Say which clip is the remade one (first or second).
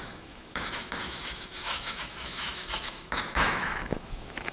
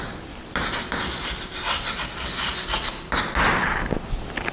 first